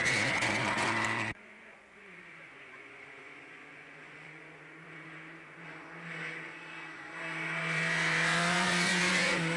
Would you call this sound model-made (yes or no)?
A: yes